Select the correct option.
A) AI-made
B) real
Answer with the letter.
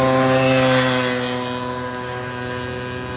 B